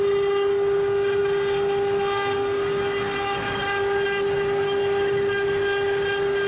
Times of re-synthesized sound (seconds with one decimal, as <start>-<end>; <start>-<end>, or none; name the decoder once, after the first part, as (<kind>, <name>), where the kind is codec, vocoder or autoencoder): none